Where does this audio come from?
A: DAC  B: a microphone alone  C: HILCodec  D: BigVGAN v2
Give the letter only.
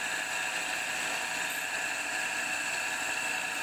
B